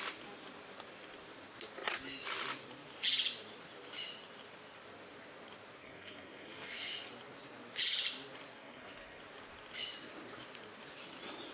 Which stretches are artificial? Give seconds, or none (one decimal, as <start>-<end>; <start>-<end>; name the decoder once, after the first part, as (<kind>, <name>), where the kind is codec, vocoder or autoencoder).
5.8-7.1 (codec, SNAC); 8.5-9.2